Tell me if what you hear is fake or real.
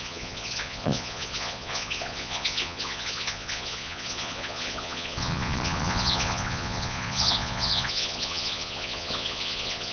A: fake